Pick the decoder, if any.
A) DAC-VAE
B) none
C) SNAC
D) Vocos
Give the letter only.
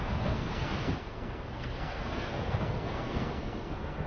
C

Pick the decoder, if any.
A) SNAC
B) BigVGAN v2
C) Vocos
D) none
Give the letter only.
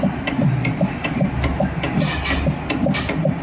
D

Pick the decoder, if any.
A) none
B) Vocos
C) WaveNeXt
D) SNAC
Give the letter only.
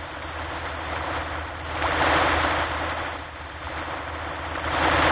A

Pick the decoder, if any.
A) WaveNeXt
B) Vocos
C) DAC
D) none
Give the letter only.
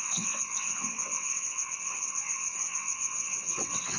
A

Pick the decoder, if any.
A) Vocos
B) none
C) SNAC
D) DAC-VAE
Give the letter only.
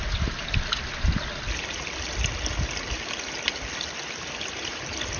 B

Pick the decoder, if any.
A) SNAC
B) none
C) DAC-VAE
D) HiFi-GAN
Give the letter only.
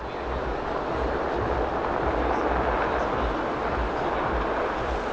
B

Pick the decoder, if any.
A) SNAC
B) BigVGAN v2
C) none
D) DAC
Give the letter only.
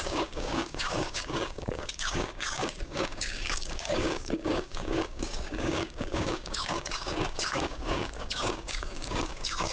D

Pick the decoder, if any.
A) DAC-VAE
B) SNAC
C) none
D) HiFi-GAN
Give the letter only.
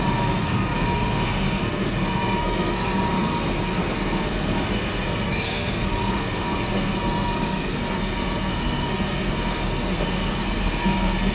B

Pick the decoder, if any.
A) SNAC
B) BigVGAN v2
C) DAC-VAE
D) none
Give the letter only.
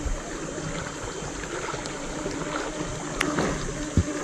D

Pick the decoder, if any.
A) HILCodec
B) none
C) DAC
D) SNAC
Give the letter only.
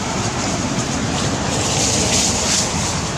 B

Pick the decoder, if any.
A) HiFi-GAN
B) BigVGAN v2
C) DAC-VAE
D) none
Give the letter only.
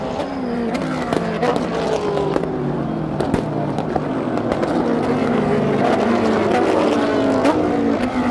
D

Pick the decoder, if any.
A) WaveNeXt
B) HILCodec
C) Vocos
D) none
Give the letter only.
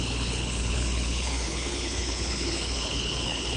B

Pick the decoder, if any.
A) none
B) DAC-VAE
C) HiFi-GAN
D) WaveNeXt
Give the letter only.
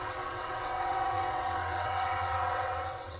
D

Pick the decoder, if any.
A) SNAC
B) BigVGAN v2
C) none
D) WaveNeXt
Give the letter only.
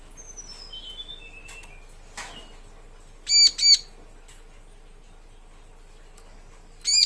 C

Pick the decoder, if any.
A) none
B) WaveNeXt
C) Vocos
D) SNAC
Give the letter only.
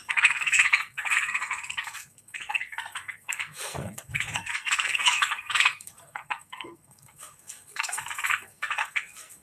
D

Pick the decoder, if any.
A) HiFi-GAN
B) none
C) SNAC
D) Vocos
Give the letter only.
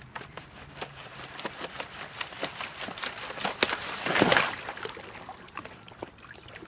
B